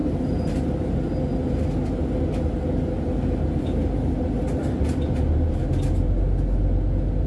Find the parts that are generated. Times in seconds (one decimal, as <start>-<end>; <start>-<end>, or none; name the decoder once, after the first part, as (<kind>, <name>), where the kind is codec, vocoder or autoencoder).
none